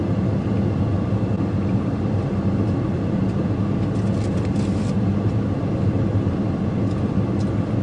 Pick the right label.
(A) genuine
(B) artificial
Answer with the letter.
A